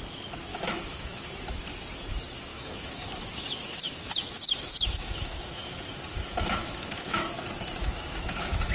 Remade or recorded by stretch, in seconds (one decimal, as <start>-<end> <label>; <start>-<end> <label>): 0.0-0.5 recorded; 0.5-1.3 remade; 1.3-2.5 recorded; 2.5-7.3 remade; 7.3-7.8 recorded; 7.8-8.7 remade